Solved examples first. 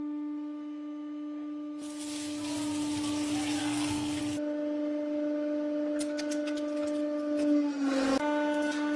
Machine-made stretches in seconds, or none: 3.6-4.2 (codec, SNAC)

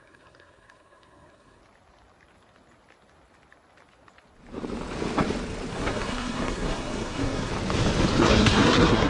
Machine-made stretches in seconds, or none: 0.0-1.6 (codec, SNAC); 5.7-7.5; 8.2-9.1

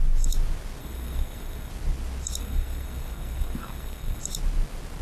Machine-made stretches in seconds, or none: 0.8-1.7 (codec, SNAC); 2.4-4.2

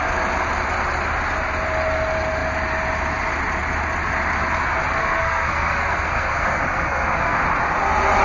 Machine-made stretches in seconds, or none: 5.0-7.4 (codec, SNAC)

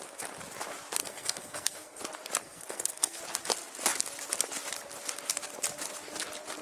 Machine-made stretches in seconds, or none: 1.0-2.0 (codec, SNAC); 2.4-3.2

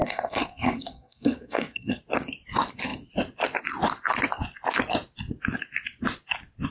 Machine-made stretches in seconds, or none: 0.0-2.0 (codec, SNAC)